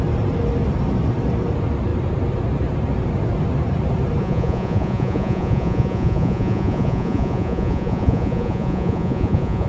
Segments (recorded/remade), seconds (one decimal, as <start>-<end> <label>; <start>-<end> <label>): 0.0-4.2 recorded; 4.2-9.7 remade